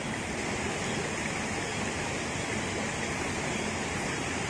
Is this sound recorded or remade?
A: recorded